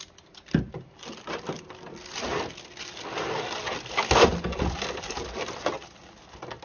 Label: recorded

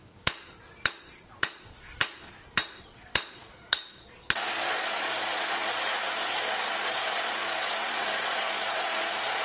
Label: remade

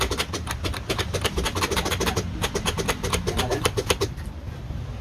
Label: remade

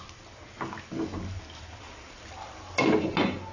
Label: recorded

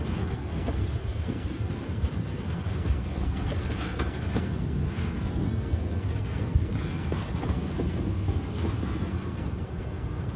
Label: remade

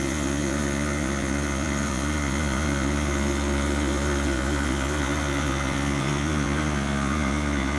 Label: remade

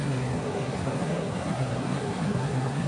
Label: remade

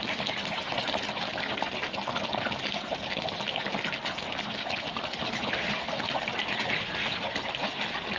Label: recorded